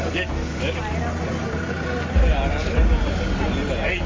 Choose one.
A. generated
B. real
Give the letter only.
B